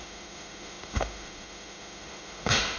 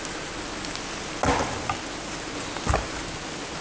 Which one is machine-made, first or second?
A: first